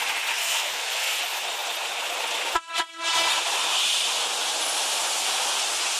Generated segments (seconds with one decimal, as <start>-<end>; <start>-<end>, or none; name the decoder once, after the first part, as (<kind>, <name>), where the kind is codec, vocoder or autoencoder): 0.4-1.2 (codec, SNAC)